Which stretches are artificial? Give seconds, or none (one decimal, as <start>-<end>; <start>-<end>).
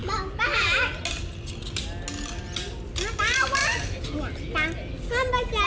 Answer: none